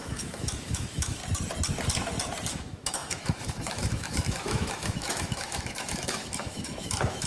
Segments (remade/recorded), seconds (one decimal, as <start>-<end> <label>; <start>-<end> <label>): 0.0-1.2 remade; 1.2-2.5 recorded; 2.5-7.3 remade